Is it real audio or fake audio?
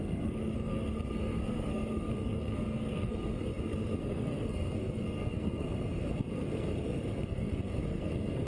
fake